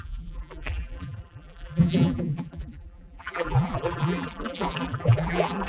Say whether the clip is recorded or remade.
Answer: remade